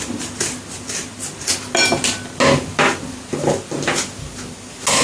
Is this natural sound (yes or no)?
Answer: yes